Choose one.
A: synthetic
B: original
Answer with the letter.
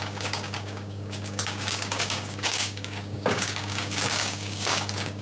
A